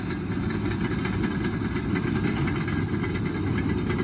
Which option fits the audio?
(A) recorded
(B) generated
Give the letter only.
A